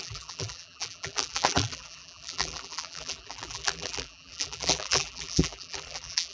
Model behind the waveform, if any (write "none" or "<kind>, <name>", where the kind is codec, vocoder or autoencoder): vocoder, BigVGAN v2